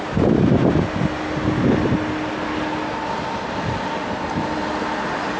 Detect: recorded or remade recorded